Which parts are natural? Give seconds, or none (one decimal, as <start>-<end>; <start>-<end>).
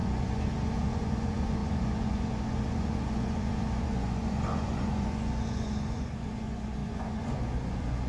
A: none